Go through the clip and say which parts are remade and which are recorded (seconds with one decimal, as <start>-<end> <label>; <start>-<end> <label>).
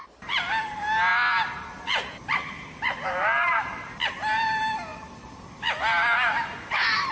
0.0-7.1 recorded